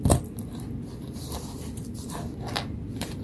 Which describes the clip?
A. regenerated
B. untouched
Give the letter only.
B